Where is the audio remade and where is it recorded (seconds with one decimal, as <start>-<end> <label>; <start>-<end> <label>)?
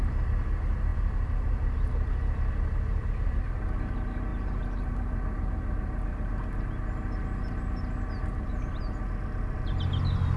0.0-10.4 recorded